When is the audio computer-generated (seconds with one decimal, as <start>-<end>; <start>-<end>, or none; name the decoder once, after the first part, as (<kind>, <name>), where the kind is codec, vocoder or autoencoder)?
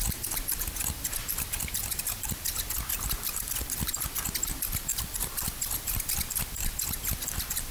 2.9-3.9 (vocoder, BigVGAN v2); 4.9-6.1